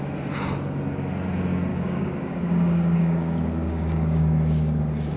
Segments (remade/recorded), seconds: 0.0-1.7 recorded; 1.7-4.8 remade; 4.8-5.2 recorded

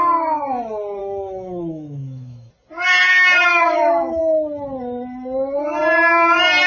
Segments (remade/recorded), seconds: 0.0-1.0 recorded; 1.0-2.5 remade; 2.5-3.5 recorded; 3.5-4.2 remade; 4.2-6.7 recorded

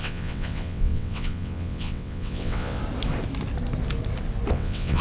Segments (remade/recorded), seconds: 0.0-2.8 remade; 2.8-4.5 recorded; 4.5-5.0 remade